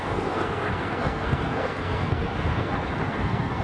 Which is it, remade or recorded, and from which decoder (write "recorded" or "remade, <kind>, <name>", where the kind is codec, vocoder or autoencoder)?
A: remade, codec, SNAC